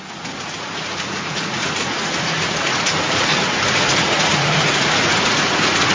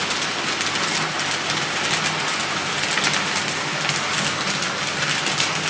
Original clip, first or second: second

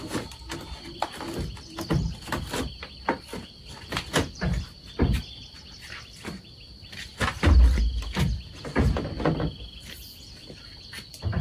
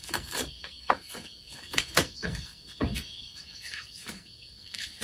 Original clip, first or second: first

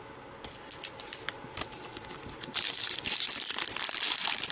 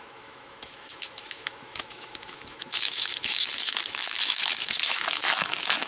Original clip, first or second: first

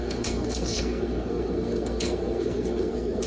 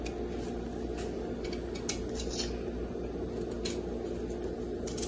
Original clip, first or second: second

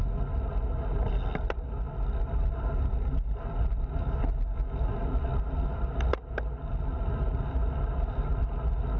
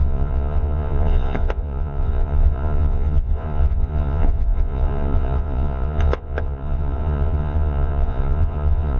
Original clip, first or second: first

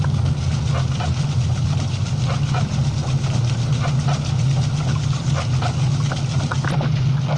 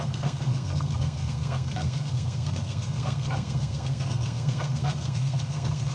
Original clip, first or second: first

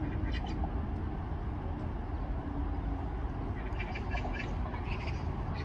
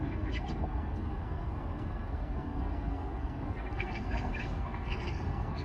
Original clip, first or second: first